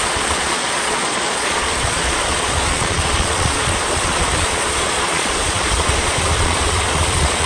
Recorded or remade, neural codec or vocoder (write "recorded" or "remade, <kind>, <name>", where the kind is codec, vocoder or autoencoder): remade, vocoder, Vocos